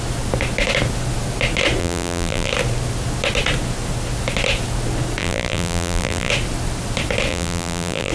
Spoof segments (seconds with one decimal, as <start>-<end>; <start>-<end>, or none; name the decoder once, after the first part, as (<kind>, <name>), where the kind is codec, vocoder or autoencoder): 1.8-2.5 (vocoder, BigVGAN v2); 5.2-6.3; 7.3-8.1